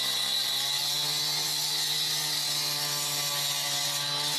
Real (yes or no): yes